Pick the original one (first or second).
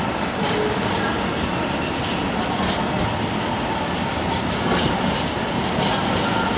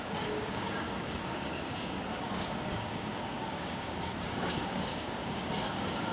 first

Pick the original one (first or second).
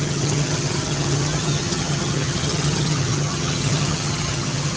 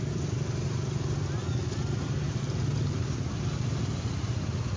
second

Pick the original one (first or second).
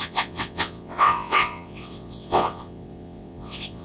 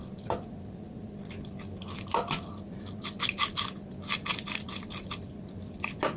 second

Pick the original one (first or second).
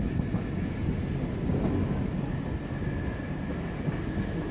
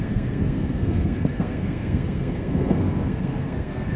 first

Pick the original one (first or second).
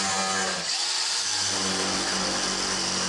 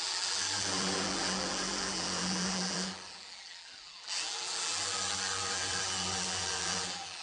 first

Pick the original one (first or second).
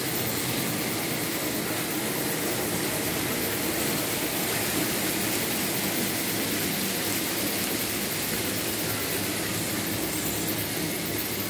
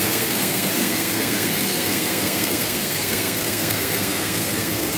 first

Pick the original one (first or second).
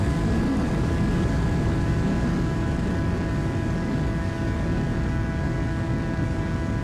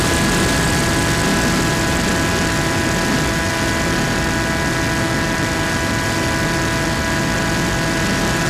second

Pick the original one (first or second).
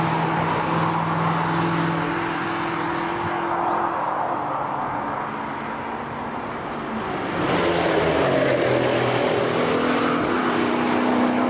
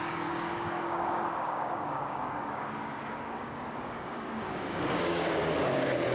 first